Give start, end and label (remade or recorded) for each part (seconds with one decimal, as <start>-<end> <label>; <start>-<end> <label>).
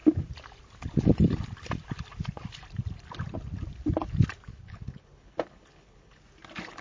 0.0-4.5 recorded; 4.5-6.2 remade; 6.2-6.8 recorded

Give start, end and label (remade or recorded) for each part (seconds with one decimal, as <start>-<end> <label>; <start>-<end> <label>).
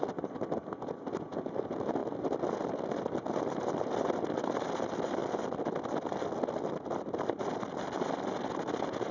0.0-9.1 recorded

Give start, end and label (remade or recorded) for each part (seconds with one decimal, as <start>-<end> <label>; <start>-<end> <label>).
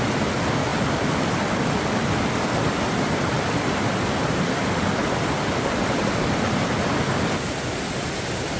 0.0-8.6 recorded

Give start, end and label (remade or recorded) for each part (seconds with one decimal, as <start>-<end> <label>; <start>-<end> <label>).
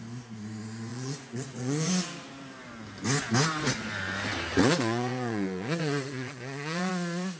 0.0-0.9 recorded; 0.9-1.9 remade; 1.9-4.5 recorded; 4.5-6.9 remade; 6.9-7.4 recorded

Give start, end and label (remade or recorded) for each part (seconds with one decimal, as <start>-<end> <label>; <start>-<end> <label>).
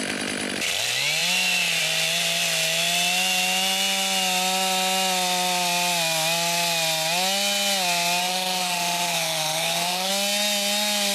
0.0-8.2 recorded; 8.2-10.1 remade; 10.1-11.1 recorded